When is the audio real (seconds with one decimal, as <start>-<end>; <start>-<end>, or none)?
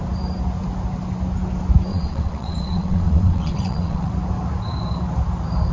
0.0-1.9; 4.1-5.7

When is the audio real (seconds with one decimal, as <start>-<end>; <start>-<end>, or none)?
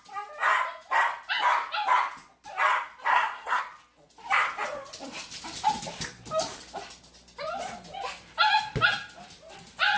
0.0-3.1; 3.6-10.0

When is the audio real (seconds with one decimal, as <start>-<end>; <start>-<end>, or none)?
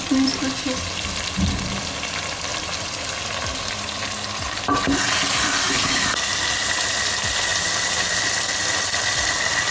0.0-9.7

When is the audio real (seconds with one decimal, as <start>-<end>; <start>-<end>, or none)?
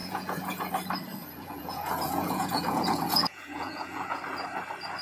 0.7-1.2; 4.2-5.0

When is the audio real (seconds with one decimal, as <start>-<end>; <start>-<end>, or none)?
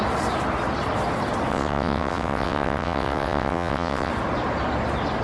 0.0-1.5; 4.1-5.2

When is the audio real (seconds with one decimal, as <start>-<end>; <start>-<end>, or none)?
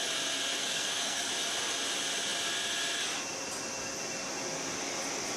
0.0-0.6; 1.3-5.4